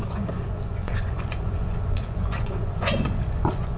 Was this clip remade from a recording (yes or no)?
yes